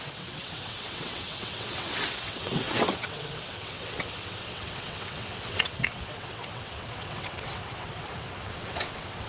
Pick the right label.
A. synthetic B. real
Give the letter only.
A